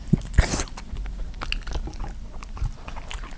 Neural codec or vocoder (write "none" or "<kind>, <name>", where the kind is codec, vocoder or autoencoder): none